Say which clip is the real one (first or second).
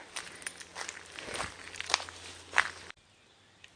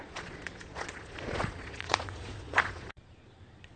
first